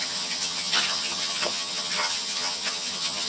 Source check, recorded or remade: remade